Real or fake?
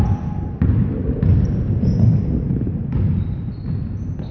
real